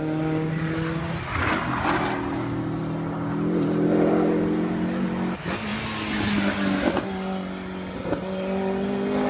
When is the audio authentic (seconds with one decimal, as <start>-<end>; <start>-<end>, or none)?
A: 0.0-9.3